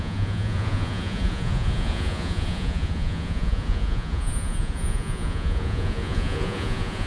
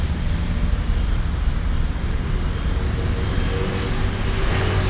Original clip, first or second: second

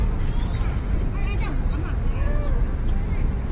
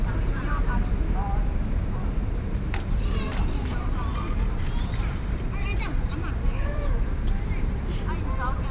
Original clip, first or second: first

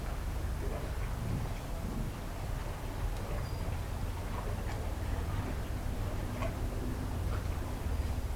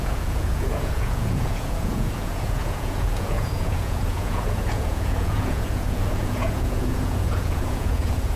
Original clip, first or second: first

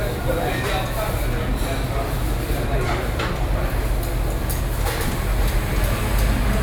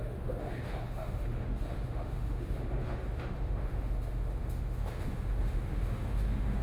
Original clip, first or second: first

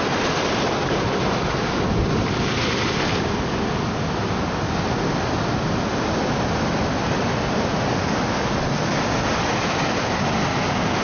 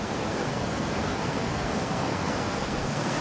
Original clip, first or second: first